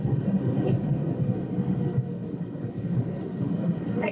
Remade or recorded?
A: remade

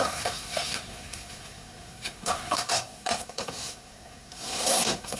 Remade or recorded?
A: remade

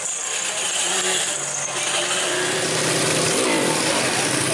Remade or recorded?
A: recorded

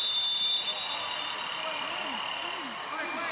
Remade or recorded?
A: recorded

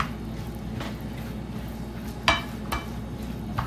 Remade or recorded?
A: recorded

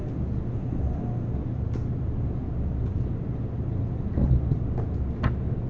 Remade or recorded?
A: recorded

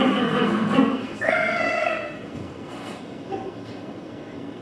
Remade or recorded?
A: remade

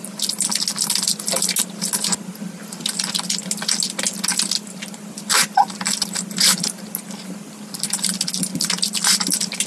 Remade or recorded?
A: recorded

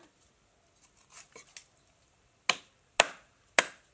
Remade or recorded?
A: recorded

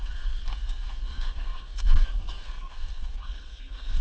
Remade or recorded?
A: remade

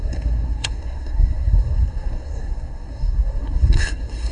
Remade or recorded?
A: remade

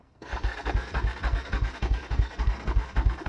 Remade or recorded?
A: remade